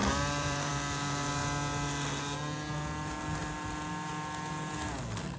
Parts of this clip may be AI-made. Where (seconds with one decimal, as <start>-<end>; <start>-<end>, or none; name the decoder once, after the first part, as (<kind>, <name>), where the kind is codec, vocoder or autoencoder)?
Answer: 0.0-0.7 (vocoder, BigVGAN v2); 3.4-4.1